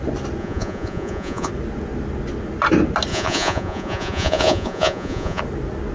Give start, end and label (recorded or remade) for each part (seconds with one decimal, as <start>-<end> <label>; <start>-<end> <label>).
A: 0.0-0.4 recorded; 0.4-1.5 remade; 1.5-3.1 recorded; 3.1-5.4 remade; 5.4-5.9 recorded